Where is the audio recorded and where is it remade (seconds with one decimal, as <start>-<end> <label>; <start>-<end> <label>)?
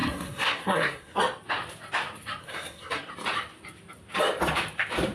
0.0-1.2 remade; 1.2-2.4 recorded; 2.4-3.1 remade; 3.1-5.1 recorded